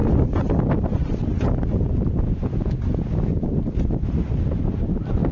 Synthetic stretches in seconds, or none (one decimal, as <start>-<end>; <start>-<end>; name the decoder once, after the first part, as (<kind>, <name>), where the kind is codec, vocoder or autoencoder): none